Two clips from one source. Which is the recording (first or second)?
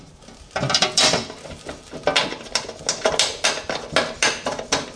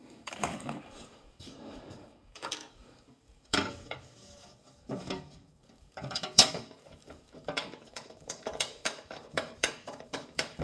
first